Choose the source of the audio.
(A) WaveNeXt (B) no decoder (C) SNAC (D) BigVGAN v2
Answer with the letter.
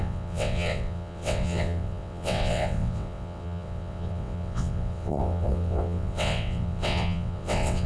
A